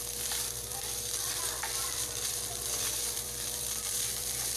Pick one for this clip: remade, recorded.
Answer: remade